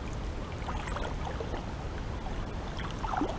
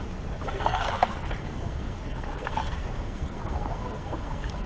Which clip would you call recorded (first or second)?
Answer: first